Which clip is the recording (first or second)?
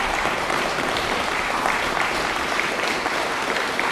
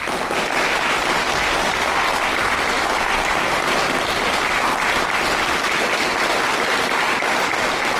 second